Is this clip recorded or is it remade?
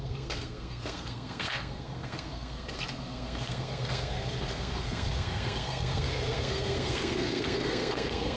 remade